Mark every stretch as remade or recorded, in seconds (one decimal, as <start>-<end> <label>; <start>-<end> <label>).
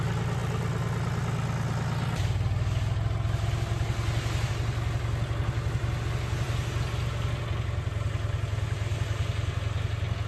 0.0-10.3 recorded